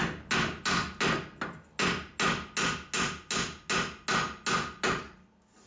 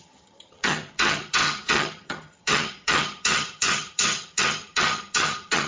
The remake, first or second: second